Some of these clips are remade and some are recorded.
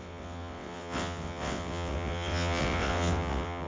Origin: remade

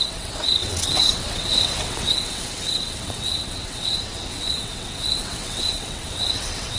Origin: remade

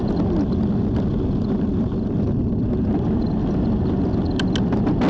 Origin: recorded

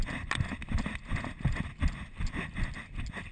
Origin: recorded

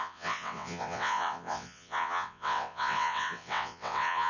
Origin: remade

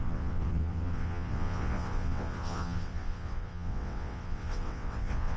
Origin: remade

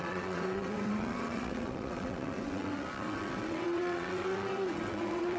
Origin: remade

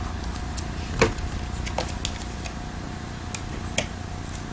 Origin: recorded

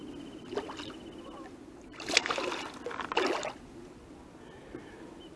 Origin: recorded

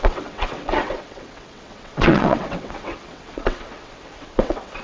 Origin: remade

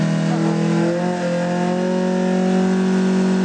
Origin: recorded